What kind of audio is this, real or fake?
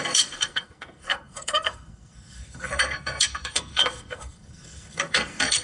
fake